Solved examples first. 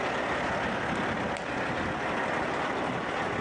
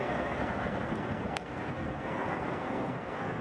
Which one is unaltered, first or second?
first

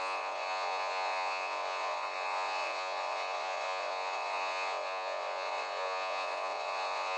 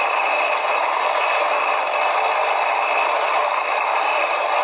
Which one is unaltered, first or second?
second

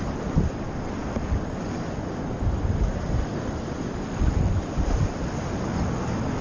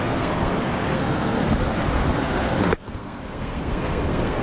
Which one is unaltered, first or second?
first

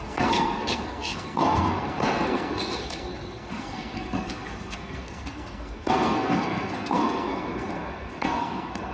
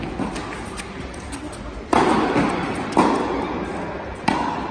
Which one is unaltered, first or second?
second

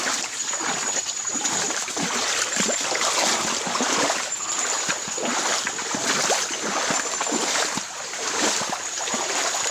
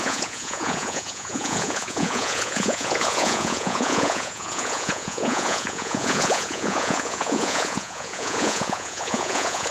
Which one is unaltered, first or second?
first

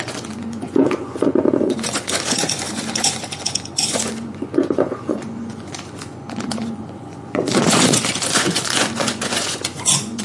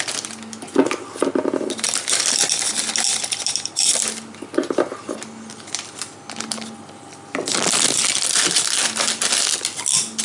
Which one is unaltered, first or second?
second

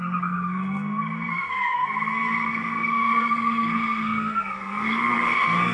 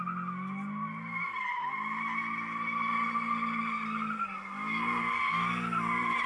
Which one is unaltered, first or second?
second